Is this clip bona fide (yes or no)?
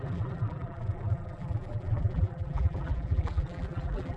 no